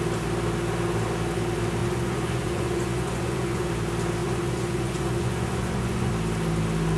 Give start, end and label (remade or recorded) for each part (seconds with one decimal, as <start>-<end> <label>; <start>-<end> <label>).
0.0-1.8 recorded; 1.8-3.7 remade; 3.7-4.2 recorded; 4.2-6.1 remade; 6.1-7.0 recorded

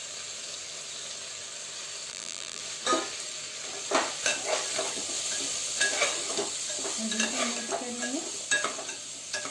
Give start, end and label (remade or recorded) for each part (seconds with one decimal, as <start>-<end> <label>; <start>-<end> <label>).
0.0-2.1 recorded; 2.1-2.6 remade; 2.6-9.5 recorded

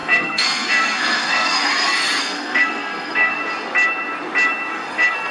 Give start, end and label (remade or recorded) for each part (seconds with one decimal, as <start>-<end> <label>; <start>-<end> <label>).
0.0-1.6 remade; 1.6-2.2 recorded; 2.2-3.4 remade; 3.4-4.7 recorded; 4.7-5.3 remade

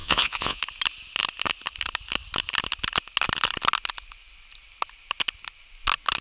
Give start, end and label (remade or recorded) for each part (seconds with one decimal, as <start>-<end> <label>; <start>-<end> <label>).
0.0-0.6 remade; 0.6-6.2 recorded

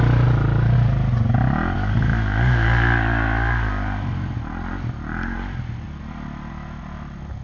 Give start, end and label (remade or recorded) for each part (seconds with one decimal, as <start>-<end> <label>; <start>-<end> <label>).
0.0-7.4 recorded

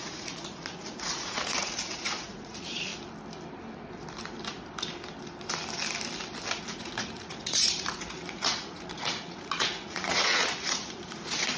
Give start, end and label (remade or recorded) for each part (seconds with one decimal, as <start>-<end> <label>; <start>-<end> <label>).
0.0-2.9 remade; 2.9-6.6 recorded; 6.6-11.6 remade

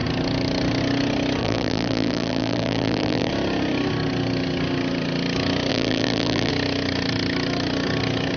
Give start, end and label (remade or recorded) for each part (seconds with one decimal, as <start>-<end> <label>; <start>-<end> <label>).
0.0-1.4 recorded; 1.4-3.3 remade; 3.3-5.7 recorded; 5.7-6.5 remade; 6.5-8.4 recorded

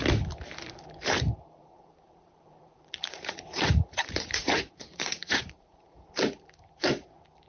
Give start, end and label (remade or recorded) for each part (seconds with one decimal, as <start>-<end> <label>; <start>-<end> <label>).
0.0-1.6 recorded; 1.6-6.1 remade; 6.1-7.5 recorded